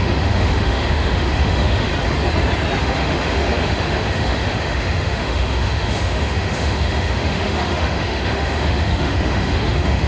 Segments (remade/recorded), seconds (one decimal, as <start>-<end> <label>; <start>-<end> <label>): 0.0-1.9 remade; 1.9-2.8 recorded; 2.8-10.1 remade